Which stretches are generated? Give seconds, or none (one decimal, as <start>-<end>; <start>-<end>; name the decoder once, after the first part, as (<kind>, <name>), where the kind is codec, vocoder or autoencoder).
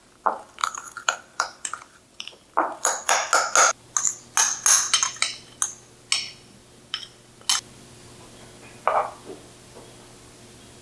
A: 0.6-3.1 (vocoder, BigVGAN v2)